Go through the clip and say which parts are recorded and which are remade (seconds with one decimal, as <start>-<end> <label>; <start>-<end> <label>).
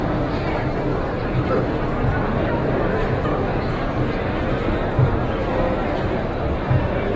0.0-7.2 recorded